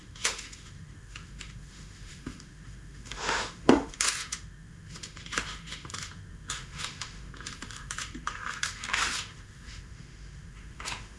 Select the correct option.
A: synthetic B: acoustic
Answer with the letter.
A